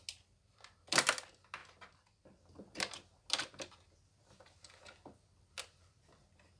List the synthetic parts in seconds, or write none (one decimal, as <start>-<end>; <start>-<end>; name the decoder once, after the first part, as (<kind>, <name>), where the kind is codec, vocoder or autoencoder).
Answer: none

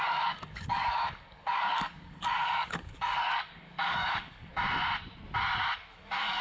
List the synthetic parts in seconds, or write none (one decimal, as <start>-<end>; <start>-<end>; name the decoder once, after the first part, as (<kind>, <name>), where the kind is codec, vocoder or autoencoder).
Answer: 0.0-4.5 (codec, DAC); 5.9-6.4

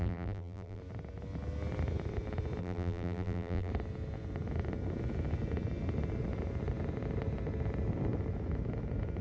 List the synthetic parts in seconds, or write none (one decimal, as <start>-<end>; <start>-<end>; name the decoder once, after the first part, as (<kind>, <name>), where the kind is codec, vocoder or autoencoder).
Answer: 0.0-0.8 (vocoder, BigVGAN v2); 2.6-3.7

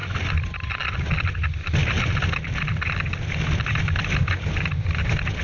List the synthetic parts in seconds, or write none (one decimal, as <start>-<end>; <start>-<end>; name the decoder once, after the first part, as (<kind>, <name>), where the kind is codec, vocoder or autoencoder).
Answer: none

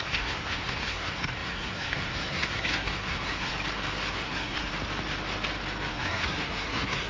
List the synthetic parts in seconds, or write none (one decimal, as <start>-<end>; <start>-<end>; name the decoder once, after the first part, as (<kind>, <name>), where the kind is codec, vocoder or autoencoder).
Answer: 0.0-3.5 (codec, SNAC); 4.1-4.7; 5.9-7.1

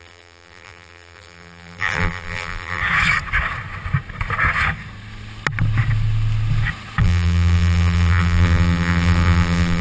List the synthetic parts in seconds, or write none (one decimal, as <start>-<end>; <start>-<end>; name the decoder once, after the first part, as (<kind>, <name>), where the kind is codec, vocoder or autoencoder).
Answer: 0.0-2.8 (vocoder, BigVGAN v2); 7.0-9.8

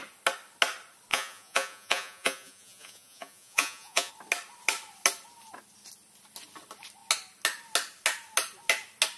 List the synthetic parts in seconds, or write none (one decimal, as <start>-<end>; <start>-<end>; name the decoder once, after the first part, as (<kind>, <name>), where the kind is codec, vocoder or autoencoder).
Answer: 1.1-4.1 (vocoder, Vocos)